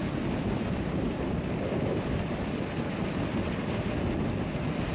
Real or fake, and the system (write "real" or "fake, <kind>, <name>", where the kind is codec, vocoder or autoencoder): real